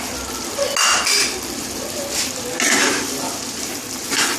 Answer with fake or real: real